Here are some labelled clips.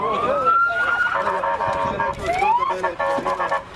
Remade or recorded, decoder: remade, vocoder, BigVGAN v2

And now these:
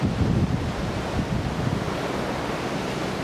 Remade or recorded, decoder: recorded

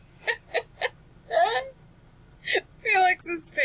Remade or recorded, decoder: recorded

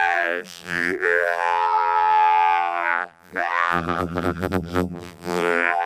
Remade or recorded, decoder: remade, vocoder, BigVGAN v2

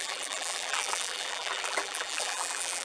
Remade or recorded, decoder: remade, vocoder, BigVGAN v2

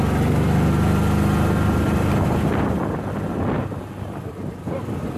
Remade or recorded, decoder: recorded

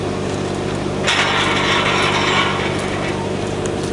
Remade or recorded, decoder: recorded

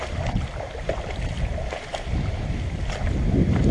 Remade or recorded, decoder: remade, vocoder, BigVGAN v2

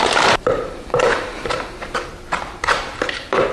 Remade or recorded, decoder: remade, vocoder, BigVGAN v2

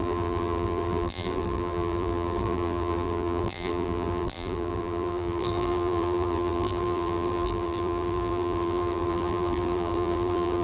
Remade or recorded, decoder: remade, vocoder, BigVGAN v2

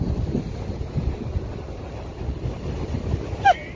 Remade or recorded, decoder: recorded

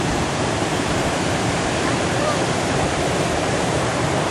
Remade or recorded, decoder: remade, vocoder, BigVGAN v2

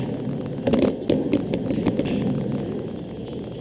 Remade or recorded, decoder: recorded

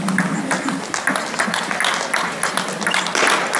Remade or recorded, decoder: recorded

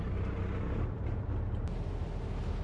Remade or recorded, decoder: recorded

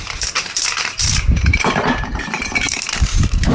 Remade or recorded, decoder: remade, vocoder, BigVGAN v2